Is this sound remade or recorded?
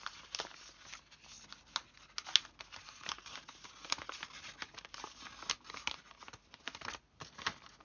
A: recorded